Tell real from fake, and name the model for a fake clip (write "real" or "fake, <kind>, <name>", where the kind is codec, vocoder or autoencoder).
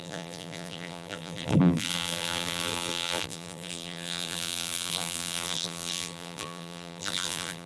fake, vocoder, BigVGAN v2